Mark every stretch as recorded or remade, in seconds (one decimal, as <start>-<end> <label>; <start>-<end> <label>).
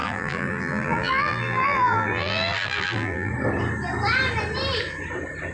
0.0-3.3 remade; 3.3-5.5 recorded